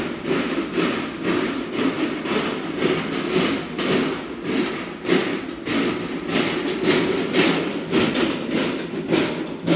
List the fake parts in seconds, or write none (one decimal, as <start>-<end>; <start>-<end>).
none